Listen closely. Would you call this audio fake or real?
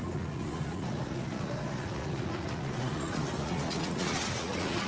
fake